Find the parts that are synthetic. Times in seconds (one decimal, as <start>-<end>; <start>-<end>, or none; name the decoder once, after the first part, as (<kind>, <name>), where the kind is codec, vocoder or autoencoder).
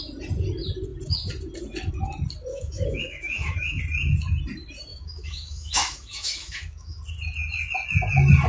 2.5-3.8 (autoencoder, DAC-VAE); 4.9-7.0